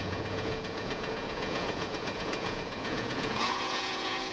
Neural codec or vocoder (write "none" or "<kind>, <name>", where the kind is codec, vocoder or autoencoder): vocoder, Vocos